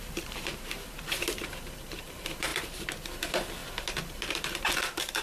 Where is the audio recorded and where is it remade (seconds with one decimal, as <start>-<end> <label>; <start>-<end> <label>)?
0.0-3.6 remade; 3.6-4.3 recorded; 4.3-5.2 remade